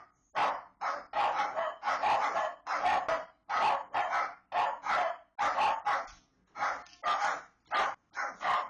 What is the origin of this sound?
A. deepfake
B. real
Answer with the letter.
B